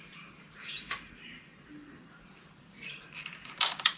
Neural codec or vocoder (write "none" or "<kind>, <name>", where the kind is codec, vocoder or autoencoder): vocoder, BigVGAN v2